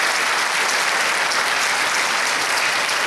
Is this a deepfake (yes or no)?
no